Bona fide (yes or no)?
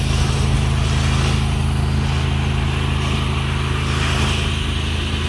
yes